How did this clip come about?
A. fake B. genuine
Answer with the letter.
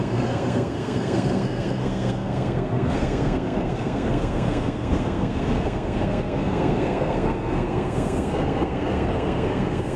A